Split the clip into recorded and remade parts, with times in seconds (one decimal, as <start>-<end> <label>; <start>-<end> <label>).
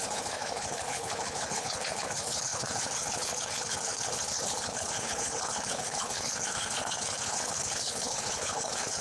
0.0-9.0 remade